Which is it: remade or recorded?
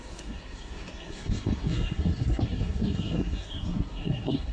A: remade